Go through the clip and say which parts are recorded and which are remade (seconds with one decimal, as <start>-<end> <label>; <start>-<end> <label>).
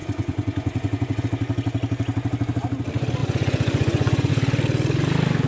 0.0-1.2 remade; 1.2-3.2 recorded; 3.2-4.3 remade; 4.3-5.5 recorded